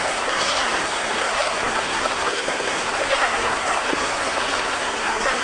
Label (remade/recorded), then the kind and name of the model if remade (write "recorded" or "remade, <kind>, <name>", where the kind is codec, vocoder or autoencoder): remade, codec, SNAC